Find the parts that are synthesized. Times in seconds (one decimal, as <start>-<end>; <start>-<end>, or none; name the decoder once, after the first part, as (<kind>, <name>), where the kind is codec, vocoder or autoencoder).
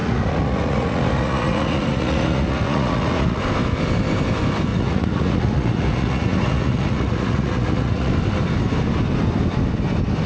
0.0-3.4 (vocoder, Vocos); 4.7-8.1